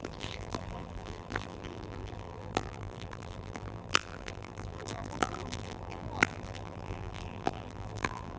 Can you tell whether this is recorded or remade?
remade